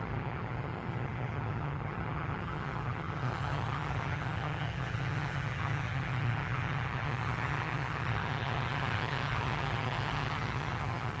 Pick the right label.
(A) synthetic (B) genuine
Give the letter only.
A